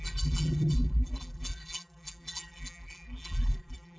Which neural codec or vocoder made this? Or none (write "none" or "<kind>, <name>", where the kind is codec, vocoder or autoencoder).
vocoder, BigVGAN v2